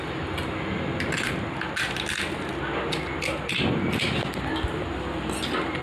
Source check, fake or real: real